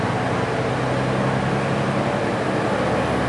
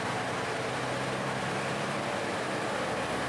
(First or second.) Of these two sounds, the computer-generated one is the second